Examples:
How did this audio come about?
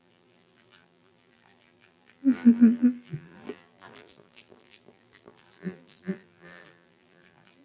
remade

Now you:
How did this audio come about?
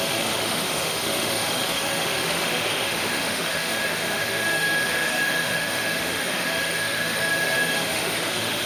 remade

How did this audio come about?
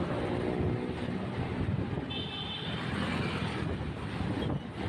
recorded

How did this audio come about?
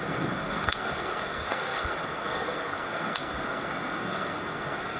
remade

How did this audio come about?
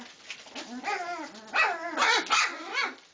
recorded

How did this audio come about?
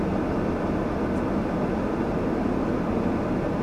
recorded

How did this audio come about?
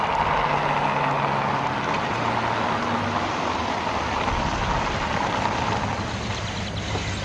recorded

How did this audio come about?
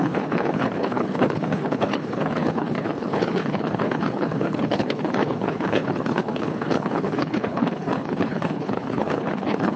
remade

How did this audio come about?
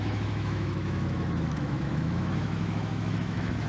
remade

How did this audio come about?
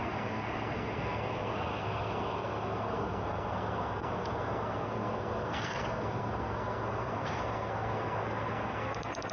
remade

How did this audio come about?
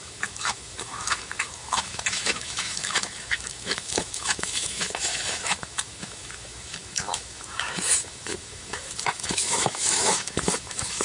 remade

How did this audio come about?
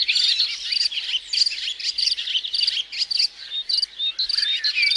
recorded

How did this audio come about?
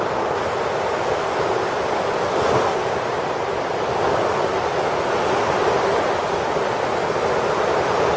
recorded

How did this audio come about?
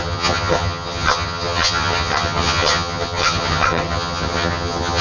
remade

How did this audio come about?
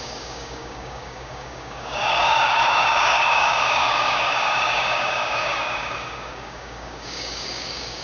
remade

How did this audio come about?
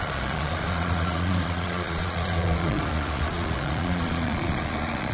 remade